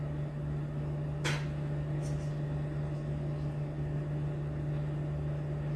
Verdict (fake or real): real